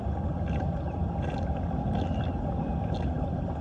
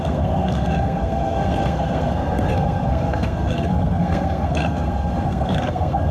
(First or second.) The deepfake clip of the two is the second